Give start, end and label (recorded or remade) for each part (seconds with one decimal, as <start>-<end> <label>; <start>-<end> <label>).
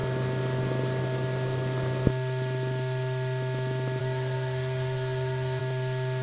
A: 0.0-4.0 recorded; 4.0-5.6 remade; 5.6-6.2 recorded